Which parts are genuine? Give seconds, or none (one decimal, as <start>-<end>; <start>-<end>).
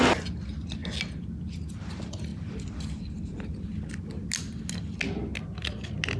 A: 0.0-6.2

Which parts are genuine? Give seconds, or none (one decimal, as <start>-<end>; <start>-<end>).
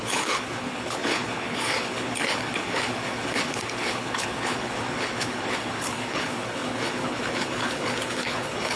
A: none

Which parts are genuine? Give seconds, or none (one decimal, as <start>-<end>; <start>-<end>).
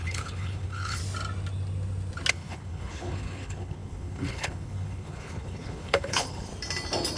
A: 1.0-2.3; 6.5-7.2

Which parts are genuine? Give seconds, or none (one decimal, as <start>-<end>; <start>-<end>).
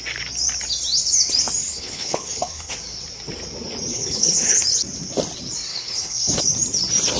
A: 0.0-1.6; 2.7-3.9; 4.6-5.7; 6.4-7.2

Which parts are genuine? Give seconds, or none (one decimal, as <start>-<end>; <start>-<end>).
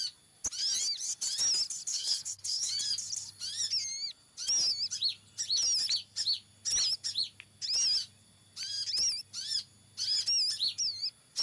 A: 0.0-1.9; 2.7-11.4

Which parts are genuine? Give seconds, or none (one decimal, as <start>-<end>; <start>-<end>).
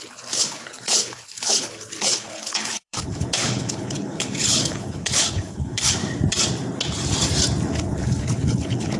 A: 6.0-7.8